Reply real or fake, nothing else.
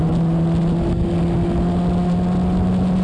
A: real